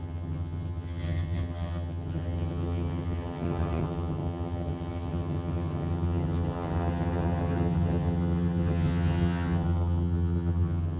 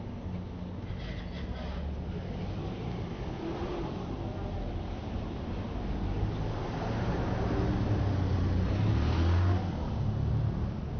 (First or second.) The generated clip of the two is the first